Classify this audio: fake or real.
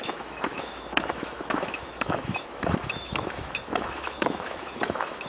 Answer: fake